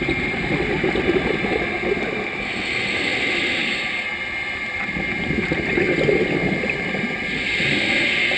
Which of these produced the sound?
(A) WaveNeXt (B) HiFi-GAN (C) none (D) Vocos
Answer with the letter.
C